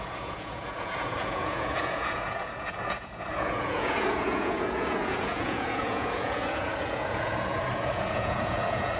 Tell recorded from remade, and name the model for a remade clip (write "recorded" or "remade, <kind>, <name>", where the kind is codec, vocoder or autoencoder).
remade, vocoder, Vocos